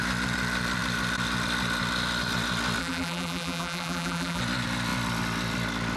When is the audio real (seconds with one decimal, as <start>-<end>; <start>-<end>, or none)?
0.0-2.8; 4.4-6.0